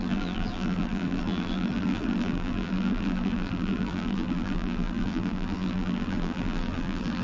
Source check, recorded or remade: remade